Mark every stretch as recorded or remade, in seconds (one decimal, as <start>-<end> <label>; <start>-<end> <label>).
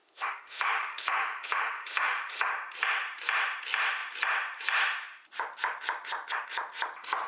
0.0-2.5 remade; 2.5-7.3 recorded